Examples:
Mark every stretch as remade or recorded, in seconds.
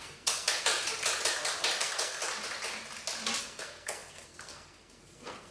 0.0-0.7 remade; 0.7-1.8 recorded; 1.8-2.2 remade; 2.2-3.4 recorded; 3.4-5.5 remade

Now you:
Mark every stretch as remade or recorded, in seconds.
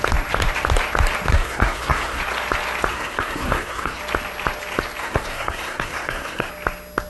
0.0-1.3 recorded; 1.3-2.2 remade; 2.2-2.9 recorded; 2.9-4.0 remade; 4.0-5.0 recorded; 5.0-6.5 remade; 6.5-7.1 recorded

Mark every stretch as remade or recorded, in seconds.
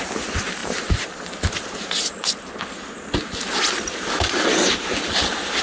0.0-0.6 recorded; 0.6-1.3 remade; 1.3-5.6 recorded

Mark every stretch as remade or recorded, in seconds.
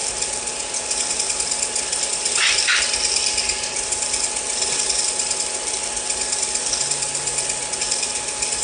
0.0-8.6 recorded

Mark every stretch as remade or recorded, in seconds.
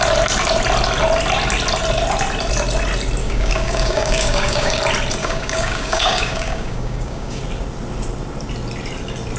0.0-3.2 recorded; 3.2-4.8 remade; 4.8-5.2 recorded; 5.2-7.4 remade; 7.4-9.4 recorded